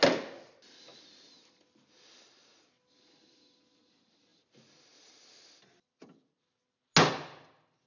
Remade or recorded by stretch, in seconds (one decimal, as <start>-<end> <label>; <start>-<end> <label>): 0.0-7.9 recorded